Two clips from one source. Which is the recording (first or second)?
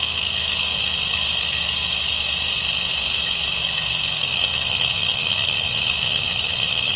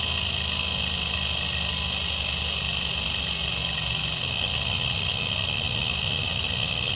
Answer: second